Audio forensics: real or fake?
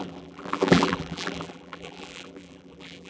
fake